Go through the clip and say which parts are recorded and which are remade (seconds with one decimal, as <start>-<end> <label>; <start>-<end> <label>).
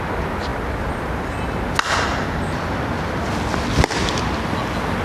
0.0-5.0 recorded